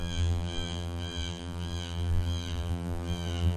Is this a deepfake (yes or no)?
yes